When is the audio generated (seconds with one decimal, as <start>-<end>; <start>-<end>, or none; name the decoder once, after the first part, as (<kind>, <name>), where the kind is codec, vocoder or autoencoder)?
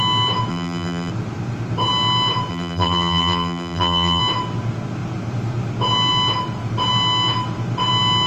0.5-1.1 (vocoder, BigVGAN v2); 2.5-4.2